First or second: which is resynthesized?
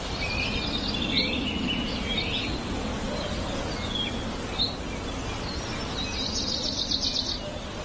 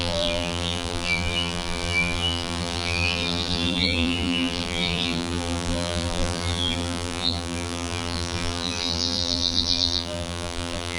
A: second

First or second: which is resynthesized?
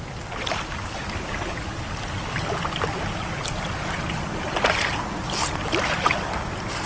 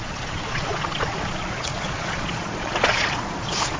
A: second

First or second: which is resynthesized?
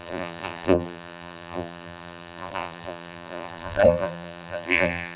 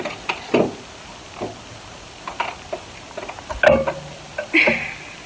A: first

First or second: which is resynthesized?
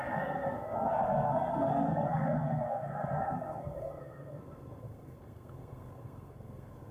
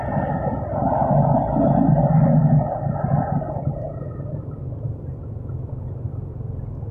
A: first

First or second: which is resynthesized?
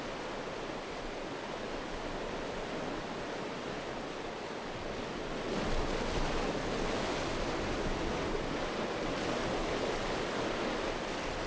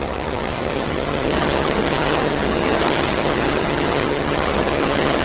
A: second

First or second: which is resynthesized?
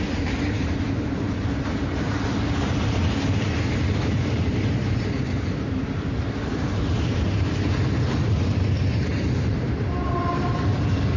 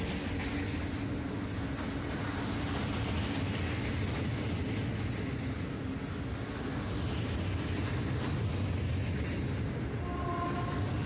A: first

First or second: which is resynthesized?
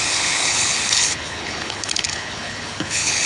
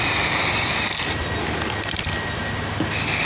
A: first